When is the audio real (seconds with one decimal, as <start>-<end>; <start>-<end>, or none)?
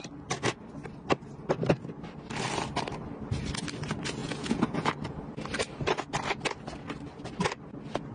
0.0-4.2; 4.9-8.1